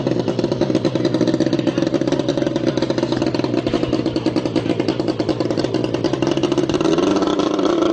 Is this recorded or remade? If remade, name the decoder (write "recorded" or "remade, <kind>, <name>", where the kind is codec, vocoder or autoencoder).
recorded